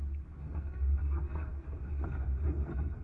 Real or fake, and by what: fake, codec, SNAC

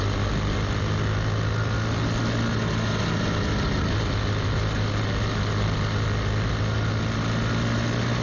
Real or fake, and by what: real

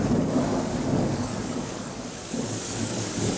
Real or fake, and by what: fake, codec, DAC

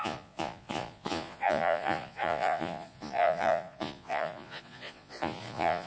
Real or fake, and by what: fake, vocoder, Vocos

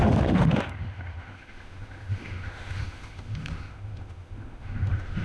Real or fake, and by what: fake, autoencoder, DAC-VAE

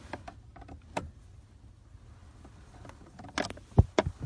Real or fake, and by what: real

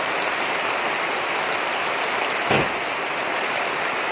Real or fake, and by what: real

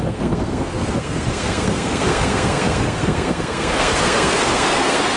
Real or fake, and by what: fake, codec, SNAC